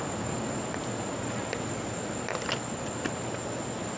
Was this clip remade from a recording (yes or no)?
no